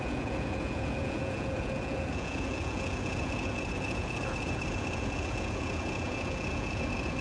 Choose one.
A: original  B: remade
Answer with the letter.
B